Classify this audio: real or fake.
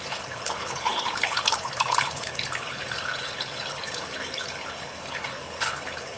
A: fake